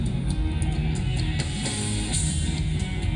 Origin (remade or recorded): recorded